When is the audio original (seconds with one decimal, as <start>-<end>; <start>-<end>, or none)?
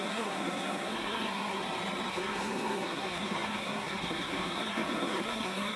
1.6-2.1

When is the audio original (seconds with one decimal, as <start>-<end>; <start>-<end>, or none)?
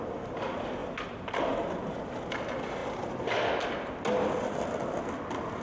0.0-5.6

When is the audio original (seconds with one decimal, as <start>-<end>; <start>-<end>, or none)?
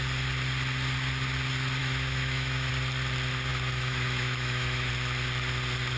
0.0-1.8; 2.7-3.5; 4.9-6.0